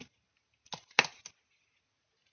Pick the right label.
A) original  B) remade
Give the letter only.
A